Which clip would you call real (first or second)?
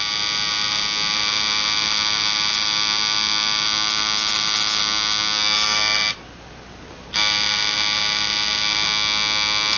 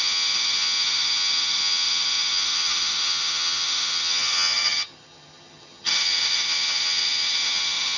first